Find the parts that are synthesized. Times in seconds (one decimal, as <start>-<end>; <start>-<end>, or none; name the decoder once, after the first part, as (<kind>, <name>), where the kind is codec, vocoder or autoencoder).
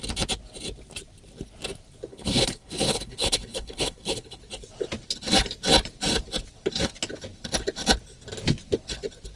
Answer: 2.1-4.4 (codec, HILCodec)